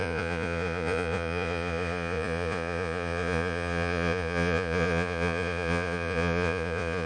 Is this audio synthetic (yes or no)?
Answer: yes